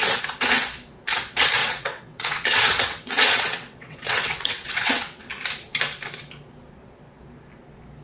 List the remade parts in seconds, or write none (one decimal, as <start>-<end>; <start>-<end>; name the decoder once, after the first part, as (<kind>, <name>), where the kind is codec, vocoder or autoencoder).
1.6-5.3 (vocoder, WaveNeXt)